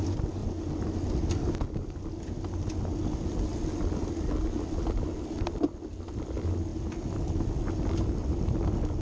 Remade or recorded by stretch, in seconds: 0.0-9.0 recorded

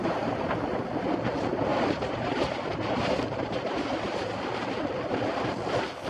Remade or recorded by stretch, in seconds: 0.0-0.8 remade; 0.8-1.7 recorded; 1.7-4.5 remade; 4.5-6.1 recorded

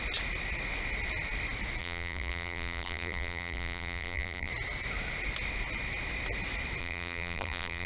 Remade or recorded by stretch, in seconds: 0.0-1.8 recorded; 1.8-4.5 remade; 4.5-6.8 recorded; 6.8-7.9 remade

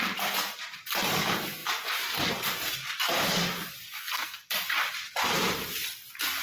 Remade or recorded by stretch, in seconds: 0.0-4.0 recorded; 4.0-4.5 remade; 4.5-6.4 recorded